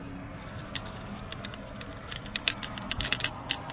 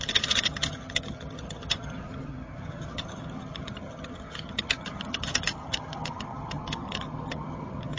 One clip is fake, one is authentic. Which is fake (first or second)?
second